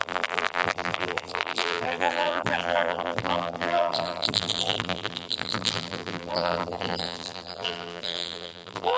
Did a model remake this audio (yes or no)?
yes